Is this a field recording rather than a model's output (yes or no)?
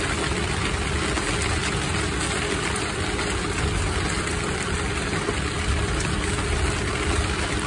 yes